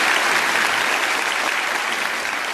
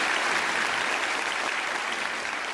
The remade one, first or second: second